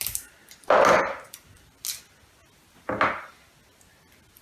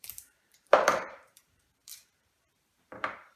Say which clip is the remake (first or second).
second